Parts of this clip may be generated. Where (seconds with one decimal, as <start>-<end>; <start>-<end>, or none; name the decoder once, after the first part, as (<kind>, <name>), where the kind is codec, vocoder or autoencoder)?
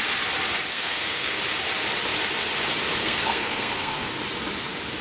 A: 0.7-1.4 (codec, SNAC); 3.0-4.1